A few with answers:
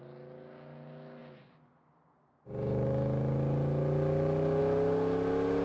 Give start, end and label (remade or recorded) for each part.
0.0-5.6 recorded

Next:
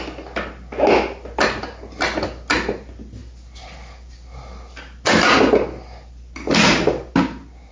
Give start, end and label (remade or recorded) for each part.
0.0-7.7 recorded

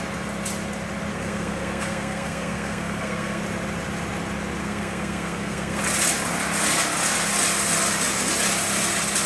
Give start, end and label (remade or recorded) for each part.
0.0-1.1 recorded; 1.1-3.4 remade; 3.4-4.6 recorded; 4.6-5.8 remade; 5.8-9.3 recorded